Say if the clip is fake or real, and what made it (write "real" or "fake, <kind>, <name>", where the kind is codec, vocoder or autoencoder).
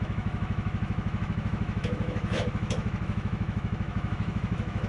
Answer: fake, autoencoder, DAC-VAE